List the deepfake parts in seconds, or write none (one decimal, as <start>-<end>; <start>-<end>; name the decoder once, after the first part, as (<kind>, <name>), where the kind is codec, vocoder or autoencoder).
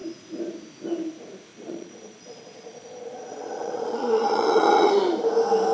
1.5-4.9 (vocoder, Vocos)